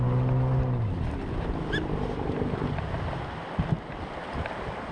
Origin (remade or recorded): recorded